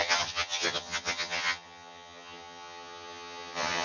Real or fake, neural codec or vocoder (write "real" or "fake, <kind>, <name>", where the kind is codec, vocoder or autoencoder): fake, vocoder, HiFi-GAN